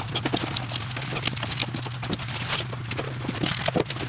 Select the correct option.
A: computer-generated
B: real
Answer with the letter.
B